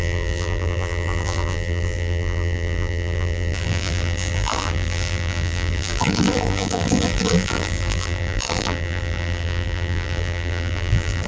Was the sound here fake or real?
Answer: fake